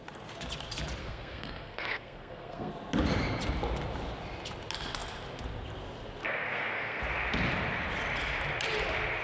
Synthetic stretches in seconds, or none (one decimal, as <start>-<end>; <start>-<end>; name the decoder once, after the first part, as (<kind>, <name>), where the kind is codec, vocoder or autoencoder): 1.0-2.7 (codec, SNAC); 6.2-7.0